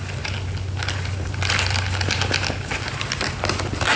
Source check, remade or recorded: recorded